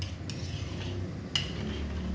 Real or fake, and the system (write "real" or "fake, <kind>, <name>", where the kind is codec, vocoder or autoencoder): real